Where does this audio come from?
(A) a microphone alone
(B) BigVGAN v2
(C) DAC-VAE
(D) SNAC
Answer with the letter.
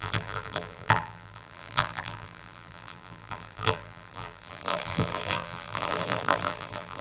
B